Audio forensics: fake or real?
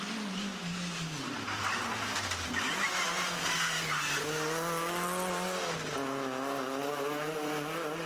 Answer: real